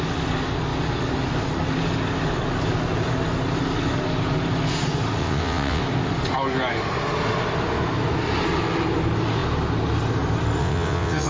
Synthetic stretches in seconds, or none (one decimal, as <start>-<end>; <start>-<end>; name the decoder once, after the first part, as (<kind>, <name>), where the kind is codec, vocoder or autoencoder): 5.2-5.8 (vocoder, WaveNeXt); 10.6-11.3